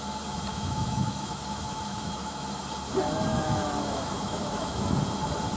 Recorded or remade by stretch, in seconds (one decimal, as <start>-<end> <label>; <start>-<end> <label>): 0.0-0.5 recorded; 0.5-2.6 remade; 2.6-3.3 recorded; 3.3-4.9 remade; 4.9-5.6 recorded